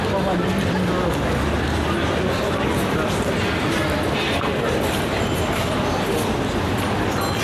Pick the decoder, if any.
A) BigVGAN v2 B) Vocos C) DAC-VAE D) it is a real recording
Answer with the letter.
D